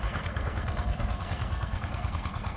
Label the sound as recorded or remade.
remade